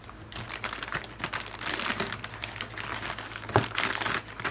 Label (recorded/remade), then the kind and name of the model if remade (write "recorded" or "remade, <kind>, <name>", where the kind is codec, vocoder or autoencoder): recorded